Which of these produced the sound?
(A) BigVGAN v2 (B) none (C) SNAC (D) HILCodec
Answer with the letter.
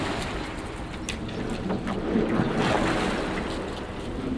B